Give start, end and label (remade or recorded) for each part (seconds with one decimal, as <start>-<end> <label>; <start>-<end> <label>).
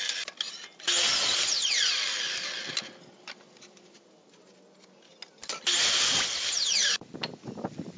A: 0.0-8.0 recorded